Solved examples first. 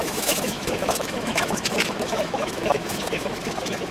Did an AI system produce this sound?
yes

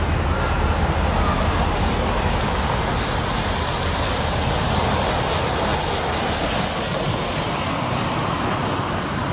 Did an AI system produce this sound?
no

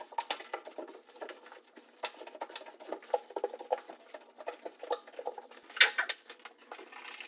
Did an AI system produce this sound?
no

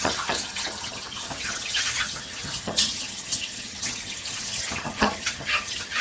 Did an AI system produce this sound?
yes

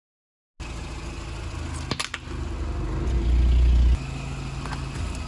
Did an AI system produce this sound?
no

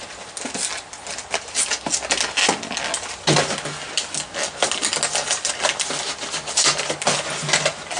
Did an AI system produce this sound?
no